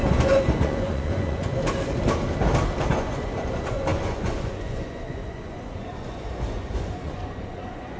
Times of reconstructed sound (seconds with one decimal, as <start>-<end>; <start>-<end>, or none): 0.0-1.6; 2.8-8.0